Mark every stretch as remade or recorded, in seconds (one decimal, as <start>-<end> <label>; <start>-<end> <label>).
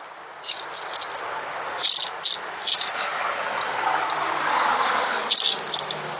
0.0-6.2 recorded